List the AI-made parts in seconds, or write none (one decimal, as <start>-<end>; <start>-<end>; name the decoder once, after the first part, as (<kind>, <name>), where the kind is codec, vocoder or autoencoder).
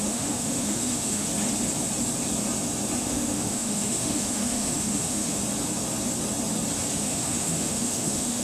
0.0-1.3 (autoencoder, DAC-VAE); 3.0-5.4; 7.0-8.4